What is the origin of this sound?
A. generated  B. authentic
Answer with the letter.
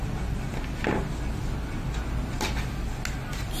B